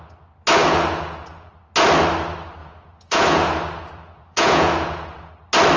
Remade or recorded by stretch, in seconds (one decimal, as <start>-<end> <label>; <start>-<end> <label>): 0.0-0.6 recorded; 0.6-1.5 remade; 1.5-2.6 recorded; 2.6-5.3 remade; 5.3-5.8 recorded